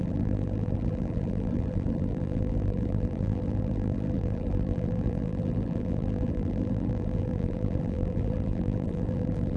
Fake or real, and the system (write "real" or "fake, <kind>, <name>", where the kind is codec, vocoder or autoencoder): fake, vocoder, BigVGAN v2